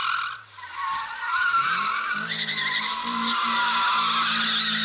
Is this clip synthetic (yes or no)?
no